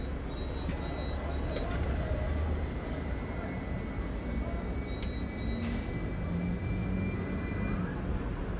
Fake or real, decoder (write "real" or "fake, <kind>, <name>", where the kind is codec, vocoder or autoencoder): real